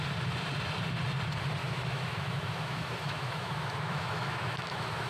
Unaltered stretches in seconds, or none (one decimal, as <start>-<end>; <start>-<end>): 0.0-1.6